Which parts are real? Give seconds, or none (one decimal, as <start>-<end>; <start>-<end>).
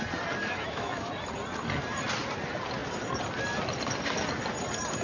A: 0.0-0.4; 1.1-5.0